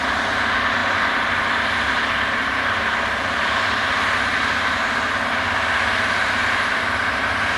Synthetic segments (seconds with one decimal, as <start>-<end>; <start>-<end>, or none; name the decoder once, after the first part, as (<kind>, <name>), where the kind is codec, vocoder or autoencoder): none